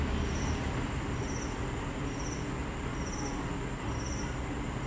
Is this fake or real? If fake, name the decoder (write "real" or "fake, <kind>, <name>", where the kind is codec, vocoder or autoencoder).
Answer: real